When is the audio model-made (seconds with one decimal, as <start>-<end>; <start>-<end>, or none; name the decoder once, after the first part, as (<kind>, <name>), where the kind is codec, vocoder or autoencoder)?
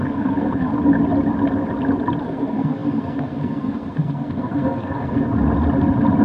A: 0.0-0.7 (codec, SNAC); 2.2-5.3